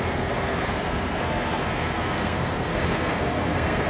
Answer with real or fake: fake